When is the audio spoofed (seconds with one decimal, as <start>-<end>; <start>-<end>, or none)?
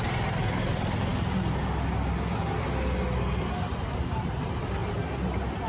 none